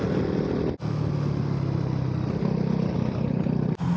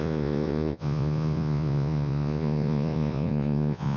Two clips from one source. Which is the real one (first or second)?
first